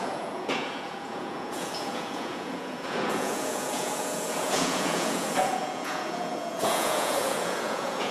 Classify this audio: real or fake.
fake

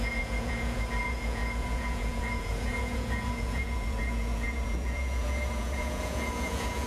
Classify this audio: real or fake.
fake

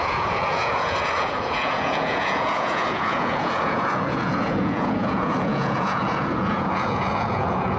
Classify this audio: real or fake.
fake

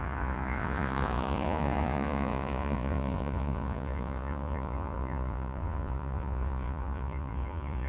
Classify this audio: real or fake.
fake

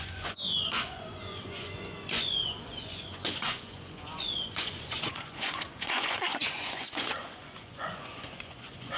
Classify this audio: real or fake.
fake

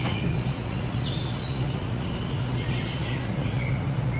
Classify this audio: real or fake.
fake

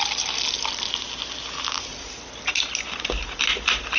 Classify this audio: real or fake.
real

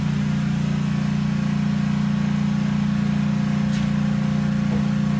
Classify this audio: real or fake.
real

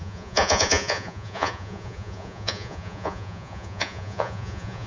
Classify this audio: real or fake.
fake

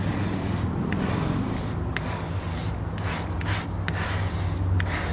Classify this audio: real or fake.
real